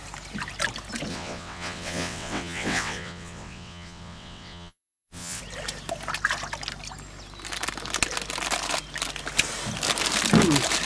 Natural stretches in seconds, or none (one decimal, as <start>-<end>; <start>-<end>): 0.0-1.1; 5.4-10.8